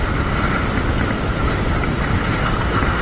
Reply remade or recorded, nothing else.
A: recorded